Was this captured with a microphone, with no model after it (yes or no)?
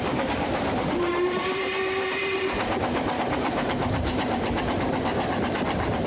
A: no